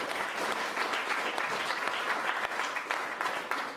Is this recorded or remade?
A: recorded